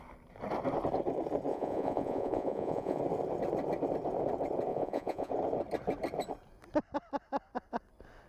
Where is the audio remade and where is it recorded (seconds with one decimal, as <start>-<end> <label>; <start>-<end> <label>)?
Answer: 0.0-1.5 recorded; 1.5-3.0 remade; 3.0-4.7 recorded; 4.7-5.3 remade; 5.3-8.3 recorded